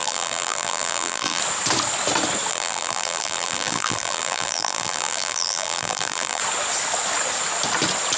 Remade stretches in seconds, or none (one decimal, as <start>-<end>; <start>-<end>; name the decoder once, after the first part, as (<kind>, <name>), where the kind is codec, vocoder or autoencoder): 0.0-1.4 (vocoder, BigVGAN v2); 2.5-6.4